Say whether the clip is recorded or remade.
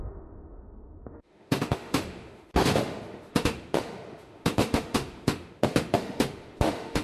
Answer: remade